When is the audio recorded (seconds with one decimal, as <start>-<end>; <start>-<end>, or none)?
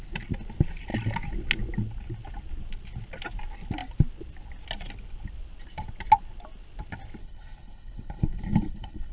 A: 0.0-7.2